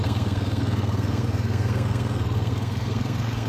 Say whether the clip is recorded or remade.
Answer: remade